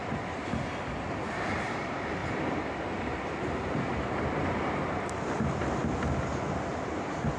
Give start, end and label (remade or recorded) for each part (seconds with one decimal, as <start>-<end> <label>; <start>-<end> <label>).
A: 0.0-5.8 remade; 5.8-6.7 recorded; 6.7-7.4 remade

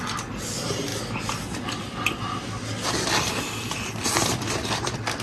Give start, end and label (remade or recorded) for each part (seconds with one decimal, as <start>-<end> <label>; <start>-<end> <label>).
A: 0.0-5.2 recorded

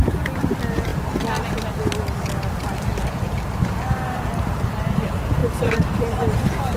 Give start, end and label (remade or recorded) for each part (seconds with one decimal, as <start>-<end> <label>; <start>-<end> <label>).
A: 0.0-6.8 recorded